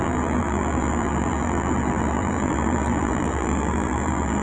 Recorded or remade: remade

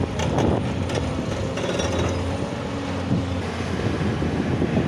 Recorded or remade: recorded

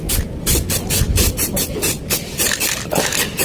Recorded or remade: recorded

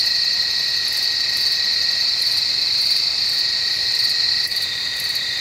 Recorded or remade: recorded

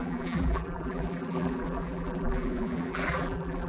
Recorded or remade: remade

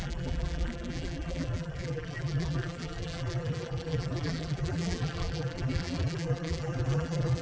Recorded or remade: remade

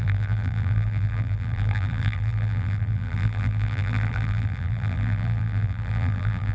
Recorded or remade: remade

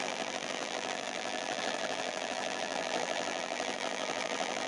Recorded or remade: remade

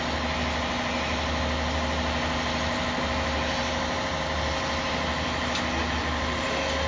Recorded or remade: recorded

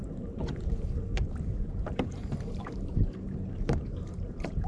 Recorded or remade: remade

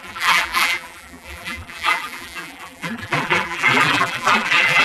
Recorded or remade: remade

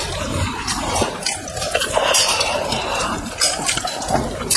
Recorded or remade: remade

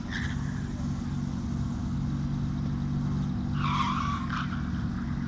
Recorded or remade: recorded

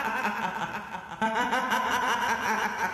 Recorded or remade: recorded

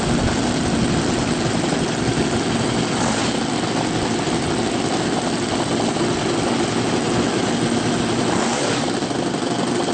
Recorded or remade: recorded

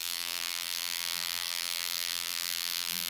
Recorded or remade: remade